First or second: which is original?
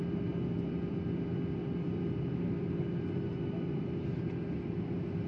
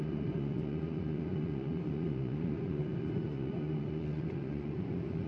first